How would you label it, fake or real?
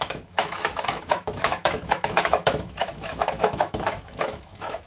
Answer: fake